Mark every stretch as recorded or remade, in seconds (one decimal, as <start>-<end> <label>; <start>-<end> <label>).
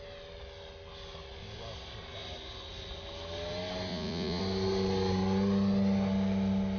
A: 0.0-3.9 recorded; 3.9-4.4 remade; 4.4-6.8 recorded